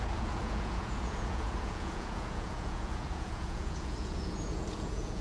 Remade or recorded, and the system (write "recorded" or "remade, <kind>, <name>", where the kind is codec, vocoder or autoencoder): remade, vocoder, Vocos